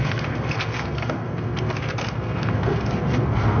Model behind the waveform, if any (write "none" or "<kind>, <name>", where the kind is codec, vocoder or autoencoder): codec, SNAC